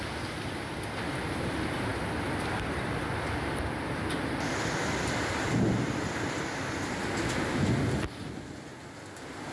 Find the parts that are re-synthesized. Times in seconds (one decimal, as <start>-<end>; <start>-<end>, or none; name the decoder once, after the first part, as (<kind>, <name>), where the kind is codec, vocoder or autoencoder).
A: none